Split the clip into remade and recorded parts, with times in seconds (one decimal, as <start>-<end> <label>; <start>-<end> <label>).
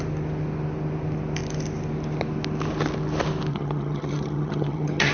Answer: 0.0-3.5 recorded; 3.5-5.1 remade